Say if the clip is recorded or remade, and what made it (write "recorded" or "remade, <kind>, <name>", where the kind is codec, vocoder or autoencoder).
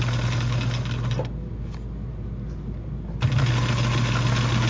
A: recorded